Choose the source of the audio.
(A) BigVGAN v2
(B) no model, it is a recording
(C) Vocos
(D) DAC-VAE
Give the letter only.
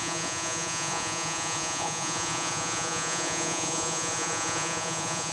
C